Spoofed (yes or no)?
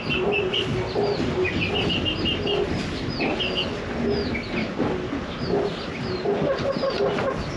no